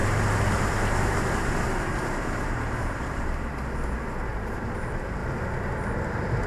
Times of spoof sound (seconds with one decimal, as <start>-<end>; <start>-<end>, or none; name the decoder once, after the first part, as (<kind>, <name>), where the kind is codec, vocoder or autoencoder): 0.0-3.5 (vocoder, BigVGAN v2); 4.3-5.2; 5.9-6.5